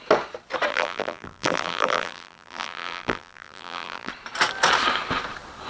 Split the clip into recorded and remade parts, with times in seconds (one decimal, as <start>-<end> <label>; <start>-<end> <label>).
0.0-0.7 recorded; 0.7-4.1 remade; 4.1-5.7 recorded